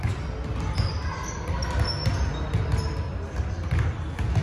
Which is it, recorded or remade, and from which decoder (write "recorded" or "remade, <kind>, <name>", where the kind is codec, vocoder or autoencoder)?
recorded